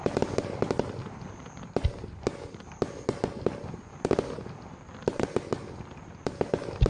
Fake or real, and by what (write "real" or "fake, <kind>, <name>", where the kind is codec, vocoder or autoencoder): real